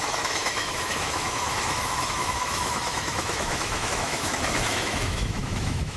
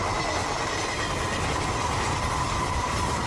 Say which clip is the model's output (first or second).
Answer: first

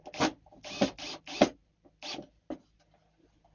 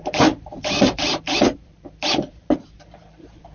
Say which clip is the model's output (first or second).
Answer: second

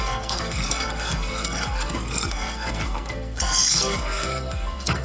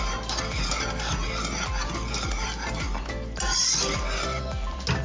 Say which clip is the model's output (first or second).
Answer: first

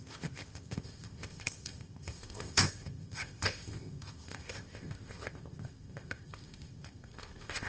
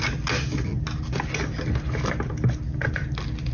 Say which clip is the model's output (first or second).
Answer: first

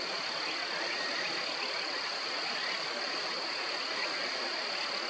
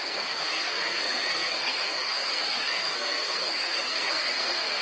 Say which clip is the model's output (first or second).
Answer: second